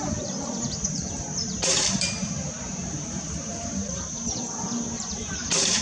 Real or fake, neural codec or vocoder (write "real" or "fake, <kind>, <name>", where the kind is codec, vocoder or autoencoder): fake, vocoder, BigVGAN v2